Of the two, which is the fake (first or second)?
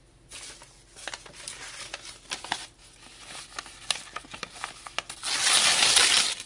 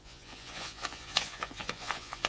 second